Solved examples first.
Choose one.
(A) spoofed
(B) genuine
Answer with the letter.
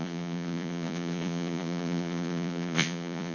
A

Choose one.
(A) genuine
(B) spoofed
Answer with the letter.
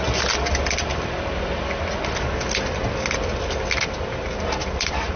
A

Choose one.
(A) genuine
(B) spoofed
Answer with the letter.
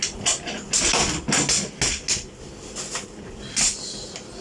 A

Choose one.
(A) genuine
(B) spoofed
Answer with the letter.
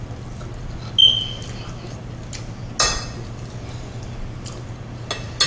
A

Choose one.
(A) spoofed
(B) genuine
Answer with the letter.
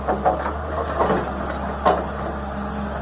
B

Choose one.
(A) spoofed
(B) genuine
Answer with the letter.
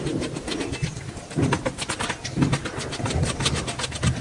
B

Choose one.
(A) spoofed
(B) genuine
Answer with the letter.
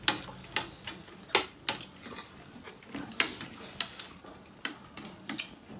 B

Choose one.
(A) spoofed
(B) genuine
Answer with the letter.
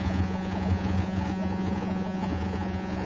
A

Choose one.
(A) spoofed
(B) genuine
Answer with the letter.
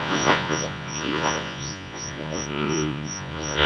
A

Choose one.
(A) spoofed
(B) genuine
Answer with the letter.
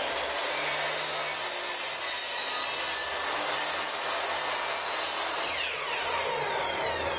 B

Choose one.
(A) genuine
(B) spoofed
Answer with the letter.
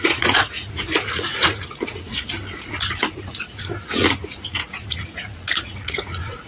B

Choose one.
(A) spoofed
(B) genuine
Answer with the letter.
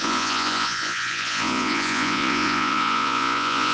A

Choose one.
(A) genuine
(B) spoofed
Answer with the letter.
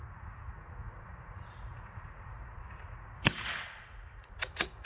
B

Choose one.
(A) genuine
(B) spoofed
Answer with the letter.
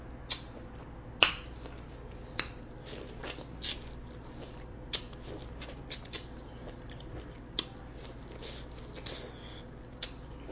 A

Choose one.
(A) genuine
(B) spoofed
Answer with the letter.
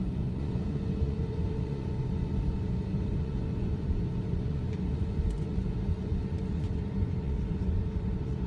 B